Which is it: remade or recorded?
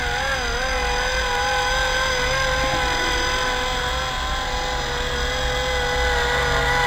recorded